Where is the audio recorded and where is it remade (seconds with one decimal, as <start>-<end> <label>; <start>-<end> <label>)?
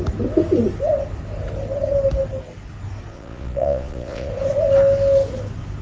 0.0-3.1 recorded; 3.1-4.3 remade; 4.3-5.8 recorded